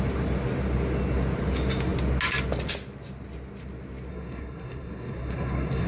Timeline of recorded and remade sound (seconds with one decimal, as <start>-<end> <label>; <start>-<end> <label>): 0.0-4.1 recorded; 4.1-5.9 remade